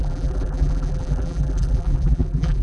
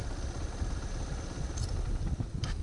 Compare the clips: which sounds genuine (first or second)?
second